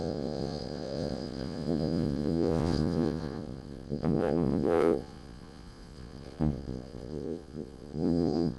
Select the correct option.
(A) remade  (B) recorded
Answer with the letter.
A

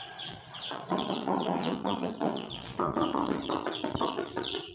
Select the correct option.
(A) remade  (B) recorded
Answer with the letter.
A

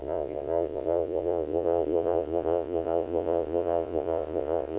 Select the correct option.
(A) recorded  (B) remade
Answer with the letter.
B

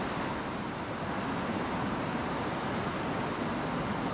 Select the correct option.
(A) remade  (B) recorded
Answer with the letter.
B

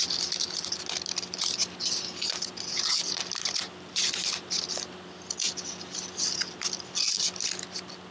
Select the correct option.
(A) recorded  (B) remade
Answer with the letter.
A